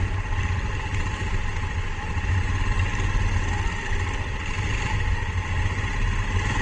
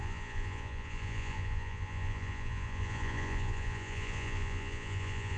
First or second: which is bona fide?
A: first